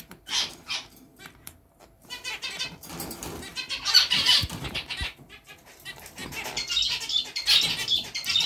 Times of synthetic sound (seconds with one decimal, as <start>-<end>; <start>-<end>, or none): 0.0-6.2; 7.7-8.5